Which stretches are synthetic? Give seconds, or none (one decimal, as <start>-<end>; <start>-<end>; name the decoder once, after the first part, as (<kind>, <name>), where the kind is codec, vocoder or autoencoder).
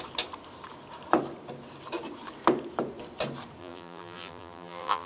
3.6-5.1 (vocoder, BigVGAN v2)